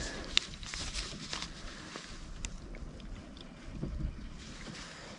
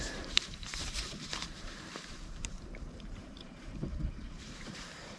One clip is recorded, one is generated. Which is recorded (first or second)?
first